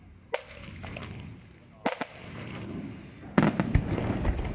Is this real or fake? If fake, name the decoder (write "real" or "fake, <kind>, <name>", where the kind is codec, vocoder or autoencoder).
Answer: real